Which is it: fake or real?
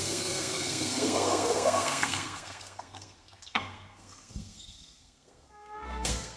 fake